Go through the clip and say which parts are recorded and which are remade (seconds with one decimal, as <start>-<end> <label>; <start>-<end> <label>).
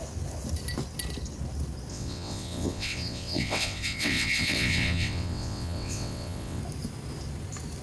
0.0-1.9 recorded; 1.9-6.6 remade; 6.6-7.8 recorded